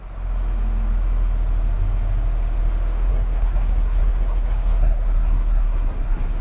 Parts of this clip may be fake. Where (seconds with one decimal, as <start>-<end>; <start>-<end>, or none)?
3.1-6.4